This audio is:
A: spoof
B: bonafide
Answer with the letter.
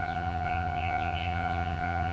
A